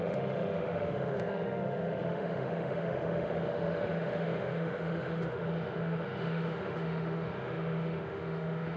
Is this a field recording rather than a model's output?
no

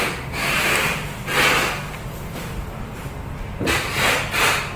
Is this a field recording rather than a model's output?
yes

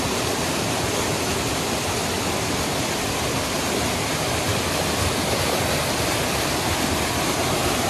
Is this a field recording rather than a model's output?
yes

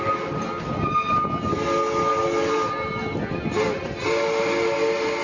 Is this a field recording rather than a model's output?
yes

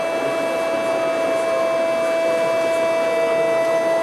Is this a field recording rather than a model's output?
yes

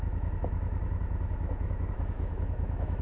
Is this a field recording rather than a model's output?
no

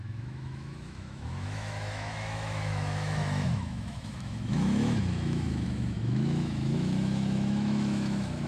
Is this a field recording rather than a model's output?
no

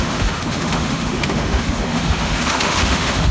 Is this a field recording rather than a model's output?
no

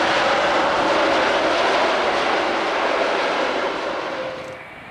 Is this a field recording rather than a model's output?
yes